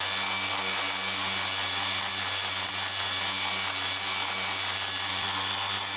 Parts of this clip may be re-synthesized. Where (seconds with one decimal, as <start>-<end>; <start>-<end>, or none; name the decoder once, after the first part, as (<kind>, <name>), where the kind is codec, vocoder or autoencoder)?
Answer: none

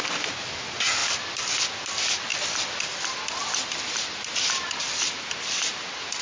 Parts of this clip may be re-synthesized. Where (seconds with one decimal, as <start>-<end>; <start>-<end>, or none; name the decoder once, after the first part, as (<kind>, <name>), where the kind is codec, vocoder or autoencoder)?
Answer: none

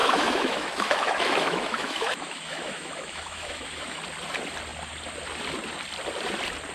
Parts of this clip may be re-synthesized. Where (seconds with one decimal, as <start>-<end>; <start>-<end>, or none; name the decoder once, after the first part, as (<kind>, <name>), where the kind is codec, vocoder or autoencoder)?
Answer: 0.0-4.0 (autoencoder, DAC-VAE)